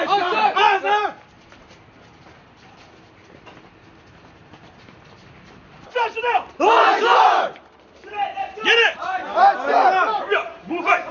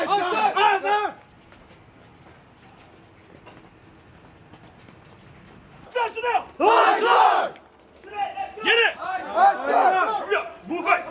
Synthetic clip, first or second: first